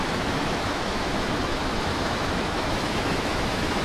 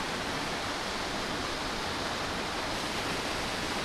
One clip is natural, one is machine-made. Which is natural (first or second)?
second